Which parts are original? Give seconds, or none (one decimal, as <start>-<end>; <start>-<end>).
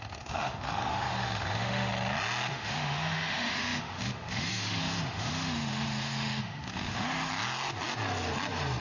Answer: 1.9-2.5; 7.3-8.8